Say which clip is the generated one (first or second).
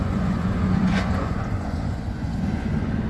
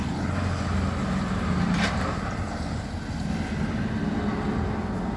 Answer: first